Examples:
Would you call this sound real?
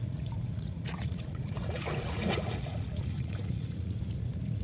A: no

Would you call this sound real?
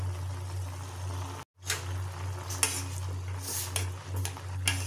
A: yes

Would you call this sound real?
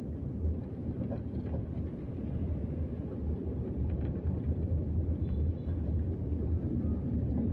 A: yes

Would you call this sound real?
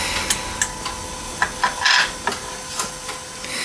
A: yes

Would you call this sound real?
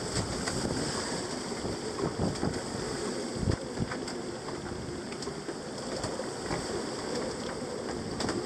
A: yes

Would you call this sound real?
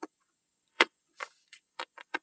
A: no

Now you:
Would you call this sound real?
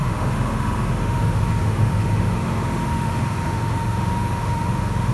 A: no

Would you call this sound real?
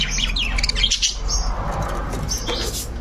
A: yes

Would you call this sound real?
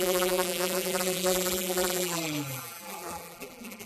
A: no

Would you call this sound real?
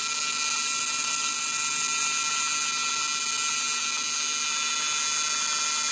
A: yes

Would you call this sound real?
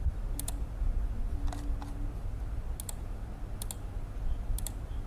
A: yes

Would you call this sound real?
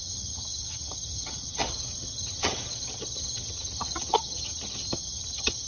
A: no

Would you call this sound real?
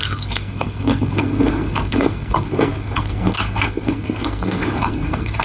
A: no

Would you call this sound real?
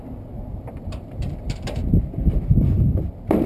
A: no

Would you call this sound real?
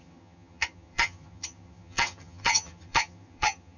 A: no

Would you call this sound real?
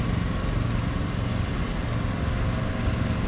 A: yes